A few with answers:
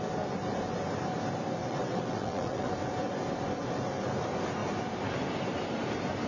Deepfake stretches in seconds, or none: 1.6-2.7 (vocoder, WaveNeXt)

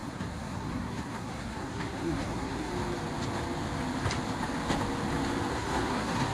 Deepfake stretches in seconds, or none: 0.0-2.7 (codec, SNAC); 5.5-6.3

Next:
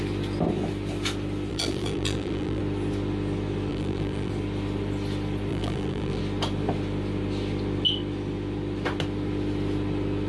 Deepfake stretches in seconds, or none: 1.5-2.6 (vocoder, BigVGAN v2); 3.7-4.3; 5.5-6.2